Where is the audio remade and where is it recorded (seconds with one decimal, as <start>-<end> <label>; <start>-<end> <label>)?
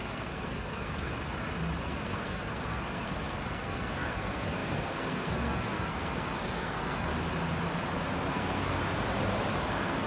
0.0-1.1 remade; 1.1-1.8 recorded; 1.8-7.1 remade; 7.1-8.3 recorded; 8.3-8.8 remade; 8.8-9.7 recorded; 9.7-10.1 remade